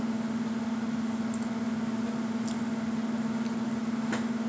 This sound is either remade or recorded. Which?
recorded